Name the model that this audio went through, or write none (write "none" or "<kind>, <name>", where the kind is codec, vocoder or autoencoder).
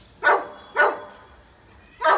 none